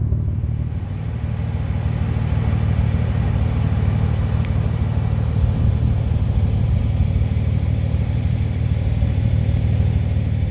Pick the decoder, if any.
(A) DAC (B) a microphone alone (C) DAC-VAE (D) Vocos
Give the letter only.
B